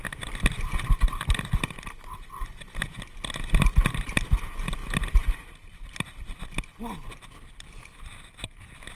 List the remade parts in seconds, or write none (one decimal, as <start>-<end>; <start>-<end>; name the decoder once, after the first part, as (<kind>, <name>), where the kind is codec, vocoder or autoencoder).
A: none